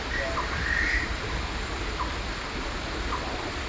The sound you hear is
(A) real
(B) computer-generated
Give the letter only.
A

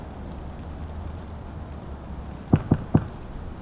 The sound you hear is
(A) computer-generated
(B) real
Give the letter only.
B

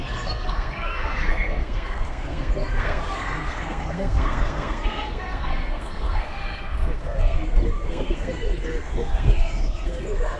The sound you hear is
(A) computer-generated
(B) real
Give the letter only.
A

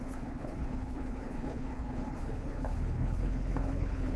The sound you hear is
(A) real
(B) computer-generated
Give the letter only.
B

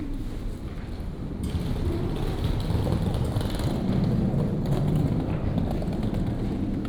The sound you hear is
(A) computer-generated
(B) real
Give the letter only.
B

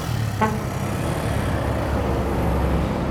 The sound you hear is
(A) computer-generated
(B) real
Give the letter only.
B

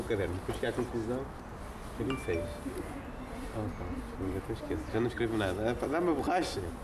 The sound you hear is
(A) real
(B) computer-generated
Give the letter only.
A